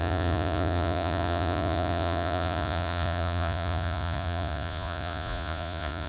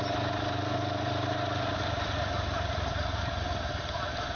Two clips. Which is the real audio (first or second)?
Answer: second